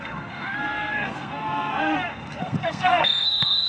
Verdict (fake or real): fake